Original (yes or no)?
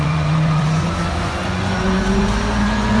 no